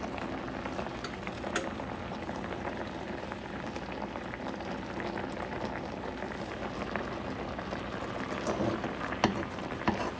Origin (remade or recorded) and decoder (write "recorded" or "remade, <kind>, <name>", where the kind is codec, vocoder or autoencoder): recorded